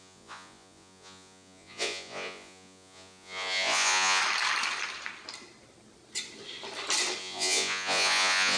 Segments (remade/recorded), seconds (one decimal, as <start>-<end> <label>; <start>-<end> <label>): 0.0-4.2 remade; 4.2-7.2 recorded; 7.2-8.6 remade